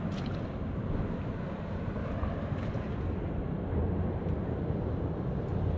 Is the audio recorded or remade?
recorded